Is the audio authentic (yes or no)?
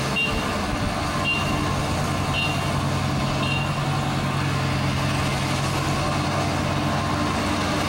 yes